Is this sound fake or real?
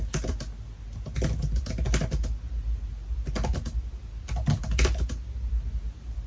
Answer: real